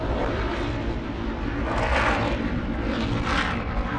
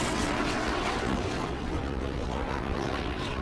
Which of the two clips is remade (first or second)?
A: second